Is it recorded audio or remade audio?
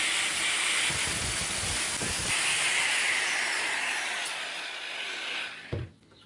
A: recorded